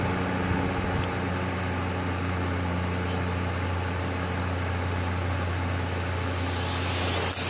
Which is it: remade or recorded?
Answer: recorded